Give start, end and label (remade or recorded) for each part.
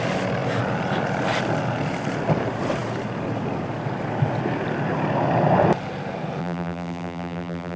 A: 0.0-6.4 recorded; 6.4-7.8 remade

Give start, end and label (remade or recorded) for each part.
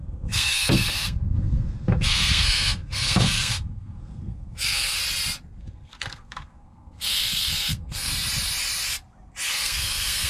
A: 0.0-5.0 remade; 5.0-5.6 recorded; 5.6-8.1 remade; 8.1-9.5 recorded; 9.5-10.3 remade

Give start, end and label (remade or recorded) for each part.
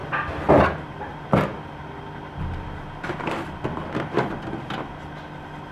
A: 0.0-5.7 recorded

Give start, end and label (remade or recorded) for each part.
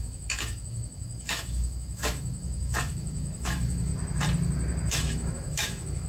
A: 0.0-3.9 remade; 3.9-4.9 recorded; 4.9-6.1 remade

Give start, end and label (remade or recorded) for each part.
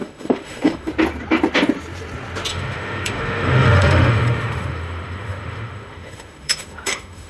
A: 0.0-0.9 remade; 0.9-2.5 recorded; 2.5-7.3 remade